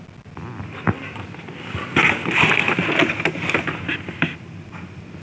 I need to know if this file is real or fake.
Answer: real